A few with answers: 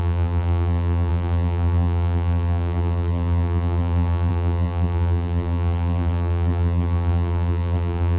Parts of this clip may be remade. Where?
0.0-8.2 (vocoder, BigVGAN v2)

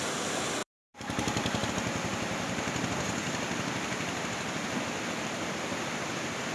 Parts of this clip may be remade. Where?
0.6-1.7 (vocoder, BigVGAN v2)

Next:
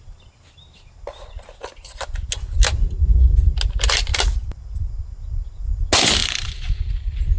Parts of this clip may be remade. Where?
4.1-4.9 (vocoder, BigVGAN v2); 6.2-6.9

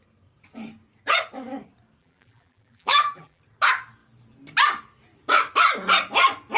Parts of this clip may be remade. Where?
2.0-3.4 (vocoder, BigVGAN v2)

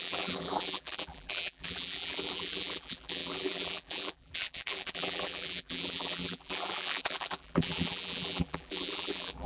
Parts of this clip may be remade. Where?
0.0-9.5 (vocoder, BigVGAN v2)